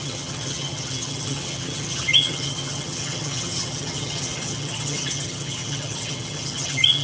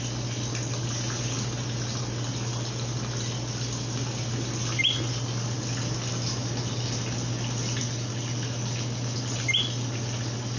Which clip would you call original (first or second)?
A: second